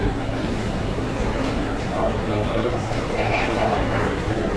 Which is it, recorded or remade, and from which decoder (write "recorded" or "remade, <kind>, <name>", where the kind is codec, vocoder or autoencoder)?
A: remade, codec, SNAC